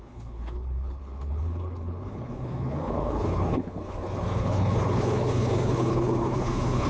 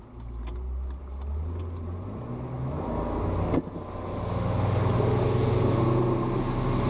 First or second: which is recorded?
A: second